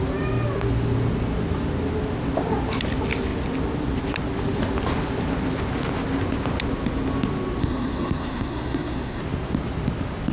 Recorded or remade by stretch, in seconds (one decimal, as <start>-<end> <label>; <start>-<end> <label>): 0.0-7.6 recorded; 7.6-9.2 remade; 9.2-10.3 recorded